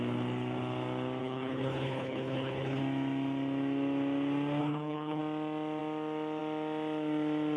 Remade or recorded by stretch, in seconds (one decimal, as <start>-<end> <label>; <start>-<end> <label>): 0.0-1.2 recorded; 1.2-2.8 remade; 2.8-4.6 recorded; 4.6-5.2 remade; 5.2-7.6 recorded